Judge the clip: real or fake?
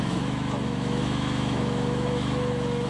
fake